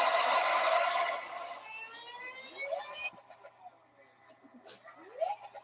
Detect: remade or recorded recorded